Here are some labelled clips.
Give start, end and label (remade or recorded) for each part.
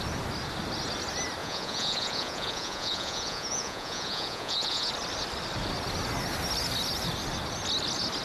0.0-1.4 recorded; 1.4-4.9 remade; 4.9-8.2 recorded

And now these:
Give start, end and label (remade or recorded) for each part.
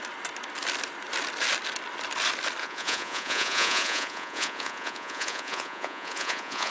0.0-2.6 recorded; 2.6-6.7 remade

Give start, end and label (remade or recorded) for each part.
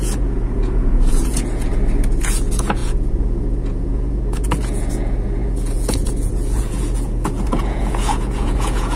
0.0-1.7 remade; 1.7-2.2 recorded; 2.2-9.0 remade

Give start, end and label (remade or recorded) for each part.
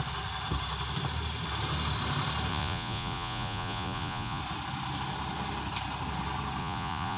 0.0-2.5 recorded; 2.5-4.4 remade; 4.4-6.6 recorded; 6.6-7.2 remade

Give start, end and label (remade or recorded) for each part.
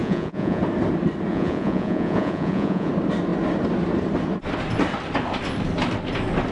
0.0-0.6 remade; 0.6-1.3 recorded; 1.3-2.9 remade; 2.9-6.5 recorded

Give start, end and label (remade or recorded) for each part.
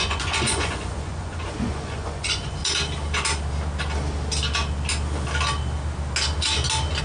0.0-2.6 remade; 2.6-7.0 recorded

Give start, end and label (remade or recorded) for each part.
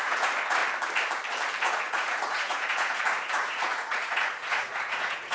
0.0-0.6 remade; 0.6-1.6 recorded; 1.6-5.3 remade